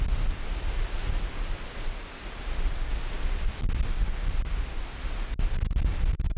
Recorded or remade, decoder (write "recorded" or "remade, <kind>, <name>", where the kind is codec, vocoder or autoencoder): recorded